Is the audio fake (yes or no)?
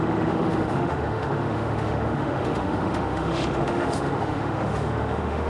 yes